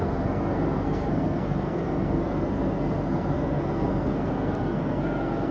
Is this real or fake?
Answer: fake